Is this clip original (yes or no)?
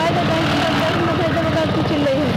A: yes